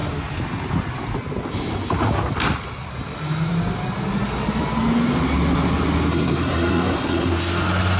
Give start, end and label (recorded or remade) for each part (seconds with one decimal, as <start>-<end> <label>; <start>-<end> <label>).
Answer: 0.0-6.1 recorded; 6.1-7.3 remade; 7.3-8.0 recorded